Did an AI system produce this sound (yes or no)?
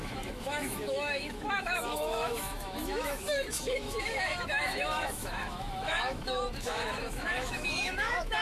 yes